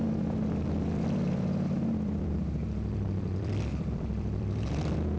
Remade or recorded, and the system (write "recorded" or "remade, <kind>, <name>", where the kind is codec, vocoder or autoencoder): remade, vocoder, BigVGAN v2